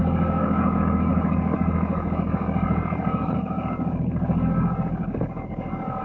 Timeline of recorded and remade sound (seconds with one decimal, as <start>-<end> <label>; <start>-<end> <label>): 0.0-6.0 remade